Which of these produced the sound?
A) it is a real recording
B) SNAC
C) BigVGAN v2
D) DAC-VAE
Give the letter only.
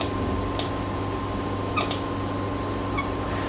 A